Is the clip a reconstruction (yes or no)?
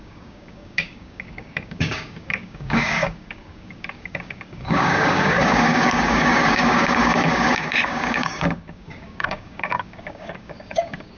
yes